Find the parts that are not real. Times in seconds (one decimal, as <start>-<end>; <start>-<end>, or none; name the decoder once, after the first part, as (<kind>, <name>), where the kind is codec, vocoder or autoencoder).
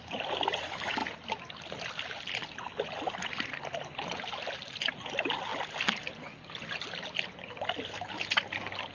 none